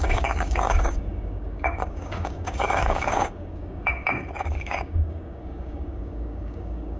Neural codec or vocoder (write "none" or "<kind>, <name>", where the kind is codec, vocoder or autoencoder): codec, DAC